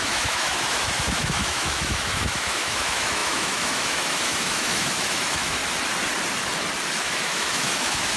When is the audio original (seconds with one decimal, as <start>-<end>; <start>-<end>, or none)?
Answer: 5.6-7.0